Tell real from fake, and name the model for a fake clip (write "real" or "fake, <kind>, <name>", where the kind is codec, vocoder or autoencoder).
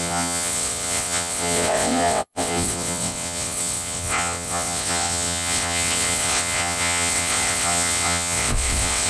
fake, vocoder, WaveNeXt